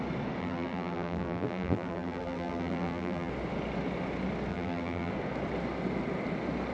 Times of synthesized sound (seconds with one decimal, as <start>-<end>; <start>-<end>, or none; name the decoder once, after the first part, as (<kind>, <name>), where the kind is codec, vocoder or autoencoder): 0.4-3.3 (vocoder, BigVGAN v2); 4.5-5.1